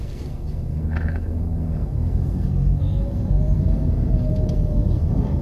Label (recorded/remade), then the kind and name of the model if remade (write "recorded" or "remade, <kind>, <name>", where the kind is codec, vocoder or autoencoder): remade, codec, SNAC